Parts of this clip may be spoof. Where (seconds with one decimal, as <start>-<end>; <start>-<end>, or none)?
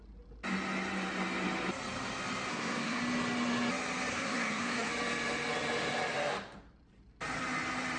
2.5-3.0; 4.1-4.9